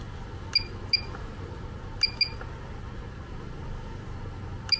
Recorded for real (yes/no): yes